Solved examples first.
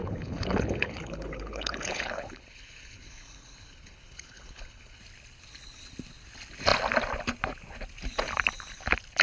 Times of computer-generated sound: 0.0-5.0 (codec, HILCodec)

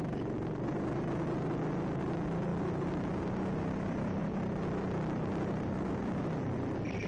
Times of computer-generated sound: none

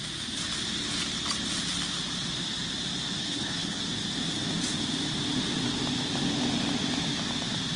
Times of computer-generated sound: 3.2-3.8 (codec, HILCodec)

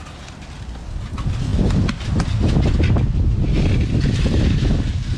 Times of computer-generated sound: none

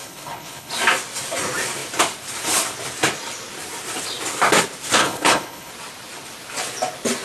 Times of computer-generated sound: 0.0-0.7 (codec, HILCodec); 5.0-5.7

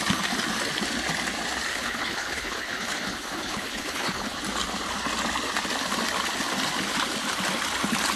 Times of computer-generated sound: 1.7-4.4 (codec, HILCodec)

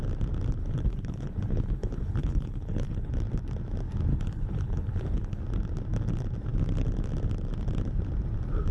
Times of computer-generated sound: 0.6-3.1 (codec, HILCodec); 4.1-5.4

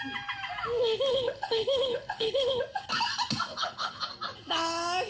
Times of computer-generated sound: 1.1-2.6 (codec, HILCodec); 3.5-4.0